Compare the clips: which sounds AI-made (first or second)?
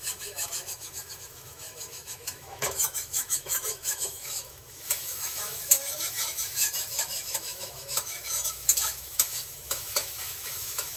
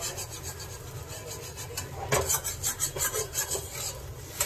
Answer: first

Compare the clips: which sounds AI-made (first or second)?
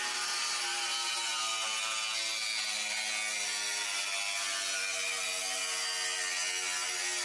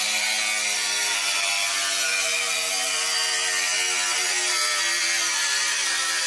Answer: second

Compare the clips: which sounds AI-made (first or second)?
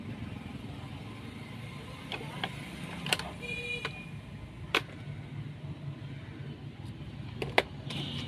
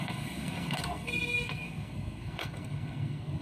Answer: second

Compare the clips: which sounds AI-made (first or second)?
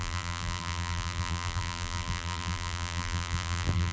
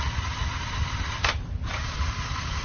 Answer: first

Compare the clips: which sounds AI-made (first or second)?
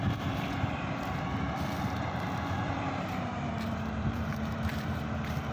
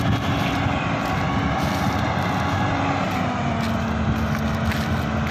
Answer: first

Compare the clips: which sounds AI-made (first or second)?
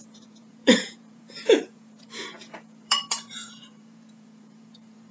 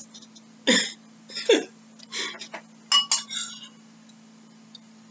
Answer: first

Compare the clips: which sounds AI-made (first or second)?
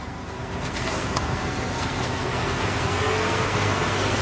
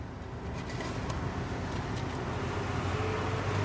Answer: first